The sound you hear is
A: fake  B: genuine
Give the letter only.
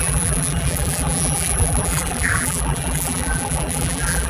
A